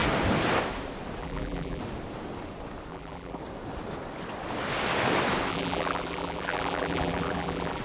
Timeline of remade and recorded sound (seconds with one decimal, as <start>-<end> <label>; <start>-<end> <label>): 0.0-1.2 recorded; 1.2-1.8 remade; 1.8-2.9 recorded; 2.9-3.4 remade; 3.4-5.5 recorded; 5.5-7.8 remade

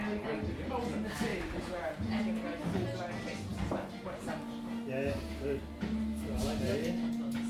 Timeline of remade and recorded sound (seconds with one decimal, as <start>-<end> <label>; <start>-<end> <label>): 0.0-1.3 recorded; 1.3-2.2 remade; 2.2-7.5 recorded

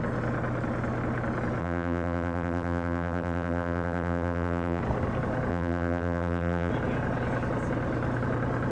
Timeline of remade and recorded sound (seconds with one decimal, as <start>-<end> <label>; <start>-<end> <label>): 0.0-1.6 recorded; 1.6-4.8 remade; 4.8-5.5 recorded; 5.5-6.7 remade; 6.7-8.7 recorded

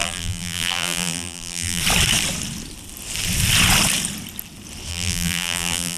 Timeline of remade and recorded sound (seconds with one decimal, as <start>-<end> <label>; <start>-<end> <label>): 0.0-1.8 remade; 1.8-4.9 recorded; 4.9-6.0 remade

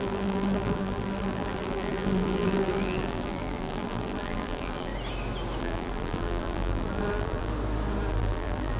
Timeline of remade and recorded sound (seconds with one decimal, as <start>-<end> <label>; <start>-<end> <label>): 0.0-4.9 remade; 4.9-5.6 recorded; 5.6-7.5 remade; 7.5-8.1 recorded; 8.1-8.8 remade

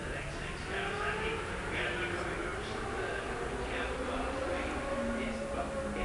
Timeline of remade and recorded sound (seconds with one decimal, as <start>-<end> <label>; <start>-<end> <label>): 0.0-6.0 recorded

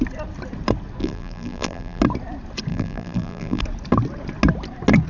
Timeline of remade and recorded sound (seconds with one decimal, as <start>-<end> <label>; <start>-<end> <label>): 0.0-1.0 recorded; 1.0-2.0 remade; 2.0-2.7 recorded; 2.7-3.6 remade; 3.6-5.1 recorded